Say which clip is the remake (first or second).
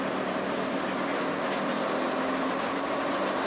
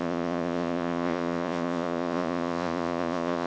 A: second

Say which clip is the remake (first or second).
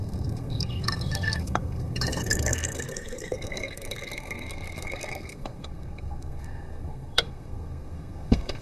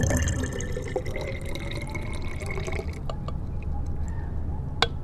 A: first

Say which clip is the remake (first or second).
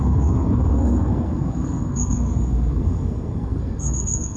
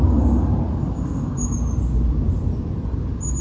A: first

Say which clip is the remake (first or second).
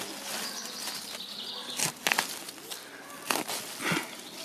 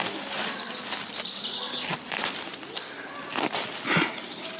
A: second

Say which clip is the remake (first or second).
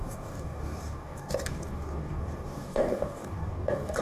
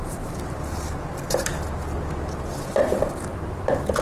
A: first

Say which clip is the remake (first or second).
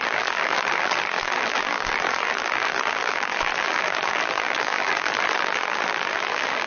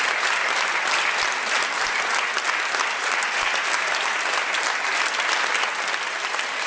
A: first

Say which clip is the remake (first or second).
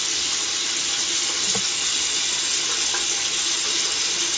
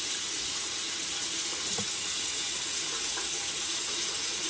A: second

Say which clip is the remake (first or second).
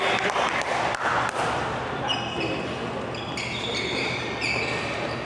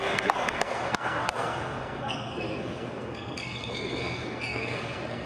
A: second